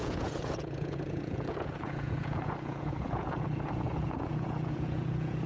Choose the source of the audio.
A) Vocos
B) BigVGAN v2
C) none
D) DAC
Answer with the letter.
A